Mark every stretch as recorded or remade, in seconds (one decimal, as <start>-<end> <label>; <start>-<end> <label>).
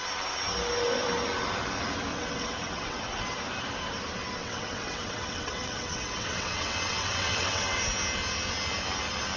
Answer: 0.0-2.1 recorded; 2.1-3.0 remade; 3.0-4.4 recorded; 4.4-7.8 remade; 7.8-9.4 recorded